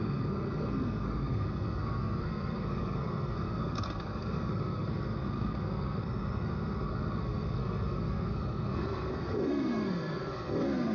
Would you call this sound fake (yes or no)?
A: yes